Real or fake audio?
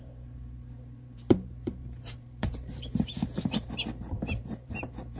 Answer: fake